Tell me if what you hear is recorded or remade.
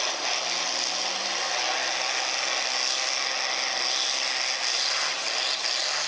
recorded